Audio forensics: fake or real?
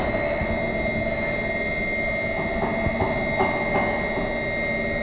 real